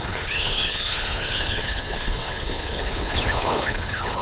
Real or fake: fake